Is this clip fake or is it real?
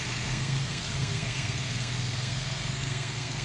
fake